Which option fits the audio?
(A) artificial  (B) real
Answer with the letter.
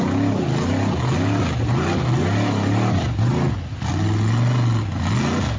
B